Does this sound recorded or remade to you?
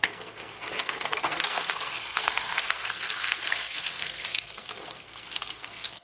remade